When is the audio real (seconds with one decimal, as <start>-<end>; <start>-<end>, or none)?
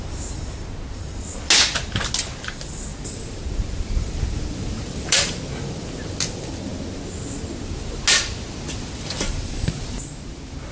0.0-2.9; 5.4-10.7